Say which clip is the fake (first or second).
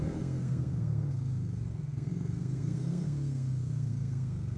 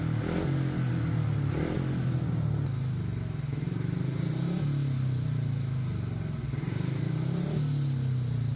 first